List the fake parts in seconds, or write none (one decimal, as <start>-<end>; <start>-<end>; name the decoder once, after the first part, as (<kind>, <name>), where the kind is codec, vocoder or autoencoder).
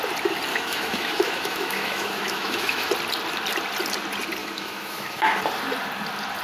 0.5-2.9 (autoencoder, DAC-VAE); 4.4-5.4